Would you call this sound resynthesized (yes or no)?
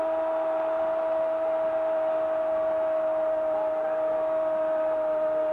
no